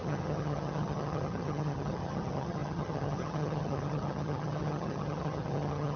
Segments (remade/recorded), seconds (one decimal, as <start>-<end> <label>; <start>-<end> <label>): 0.0-6.0 remade